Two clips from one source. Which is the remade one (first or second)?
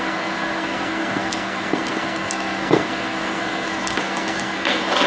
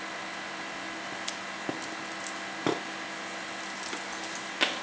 first